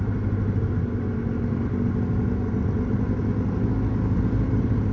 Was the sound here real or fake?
real